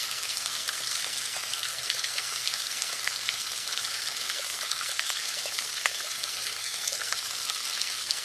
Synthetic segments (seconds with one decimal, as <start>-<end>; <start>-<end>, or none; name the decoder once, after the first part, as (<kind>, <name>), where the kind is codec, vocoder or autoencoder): 0.0-8.2 (codec, SNAC)